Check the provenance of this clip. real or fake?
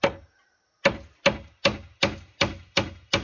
real